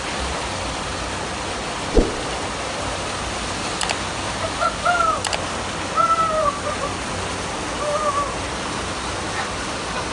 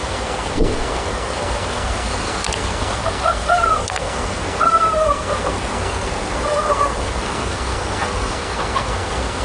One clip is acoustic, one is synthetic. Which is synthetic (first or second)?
second